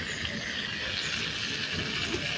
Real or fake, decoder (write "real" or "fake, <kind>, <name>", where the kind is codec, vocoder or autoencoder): real